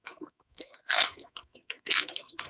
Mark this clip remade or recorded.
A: remade